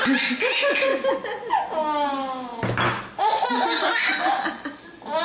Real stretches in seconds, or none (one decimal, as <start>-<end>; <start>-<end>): 0.0-5.2